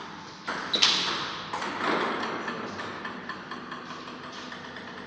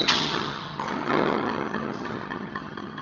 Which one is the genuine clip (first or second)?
first